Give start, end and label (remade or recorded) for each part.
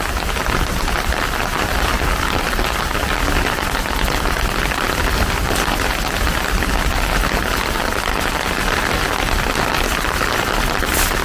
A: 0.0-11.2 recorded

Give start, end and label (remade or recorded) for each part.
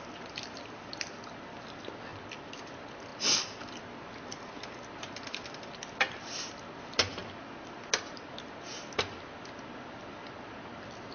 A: 0.0-11.1 recorded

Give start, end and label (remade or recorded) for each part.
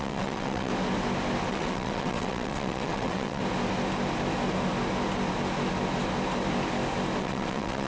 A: 0.0-0.7 remade; 0.7-1.5 recorded; 1.5-3.4 remade; 3.4-7.2 recorded; 7.2-7.9 remade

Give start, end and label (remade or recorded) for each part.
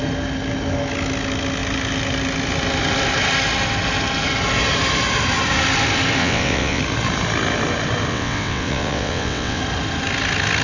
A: 0.0-6.2 recorded; 6.2-6.8 remade; 6.8-8.1 recorded; 8.1-9.6 remade; 9.6-10.6 recorded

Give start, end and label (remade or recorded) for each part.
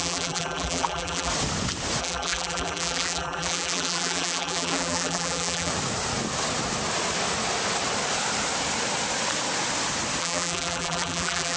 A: 0.0-1.3 remade; 1.3-2.0 recorded; 2.0-5.7 remade; 5.7-10.2 recorded; 10.2-11.6 remade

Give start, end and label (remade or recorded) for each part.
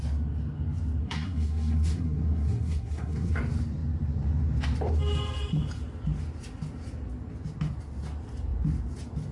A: 0.0-1.0 recorded; 1.0-3.4 remade; 3.4-9.3 recorded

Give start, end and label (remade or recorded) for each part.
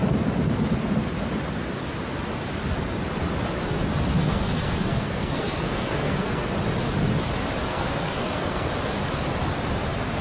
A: 0.0-4.2 recorded; 4.2-6.5 remade; 6.5-7.7 recorded; 7.7-8.7 remade; 8.7-10.2 recorded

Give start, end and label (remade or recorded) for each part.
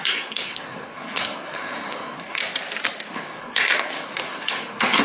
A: 0.0-2.4 remade; 2.4-3.1 recorded; 3.1-5.0 remade